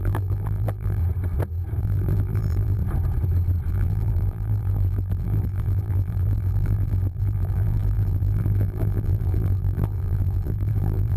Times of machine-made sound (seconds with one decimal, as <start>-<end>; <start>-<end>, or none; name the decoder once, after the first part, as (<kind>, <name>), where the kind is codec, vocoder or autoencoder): 0.0-1.0 (vocoder, BigVGAN v2); 1.8-2.8; 3.7-11.2